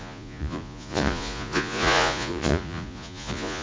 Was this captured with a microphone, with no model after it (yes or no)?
no